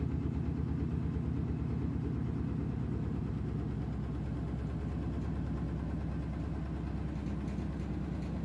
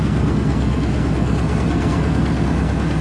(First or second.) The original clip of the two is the first